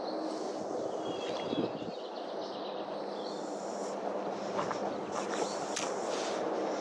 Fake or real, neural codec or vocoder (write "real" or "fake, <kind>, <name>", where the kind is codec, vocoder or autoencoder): real